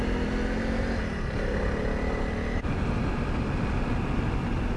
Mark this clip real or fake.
real